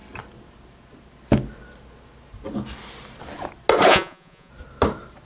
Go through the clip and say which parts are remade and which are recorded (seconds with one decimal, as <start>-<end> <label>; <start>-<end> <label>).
0.0-3.9 recorded; 3.9-4.5 remade; 4.5-5.3 recorded